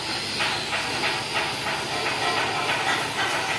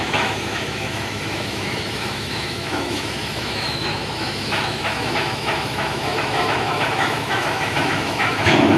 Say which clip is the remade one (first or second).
second